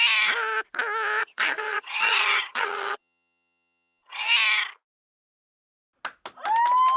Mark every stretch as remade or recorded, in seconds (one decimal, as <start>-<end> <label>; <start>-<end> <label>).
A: 0.0-1.2 recorded; 1.2-4.3 remade; 4.3-7.0 recorded